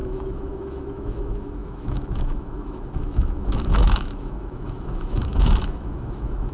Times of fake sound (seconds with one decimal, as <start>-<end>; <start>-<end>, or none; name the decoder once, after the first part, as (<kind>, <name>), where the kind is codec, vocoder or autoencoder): 0.0-6.5 (autoencoder, DAC-VAE)